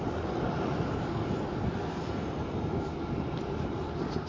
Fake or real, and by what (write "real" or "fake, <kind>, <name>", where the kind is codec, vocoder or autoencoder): real